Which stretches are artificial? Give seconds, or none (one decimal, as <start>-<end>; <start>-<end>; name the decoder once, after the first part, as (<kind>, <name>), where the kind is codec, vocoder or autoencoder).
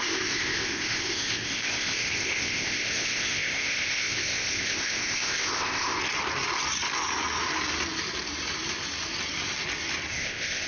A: 0.0-6.0 (codec, ZipCodec); 10.1-10.7